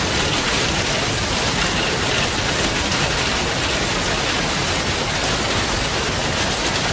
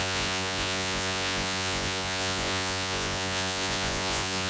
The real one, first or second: first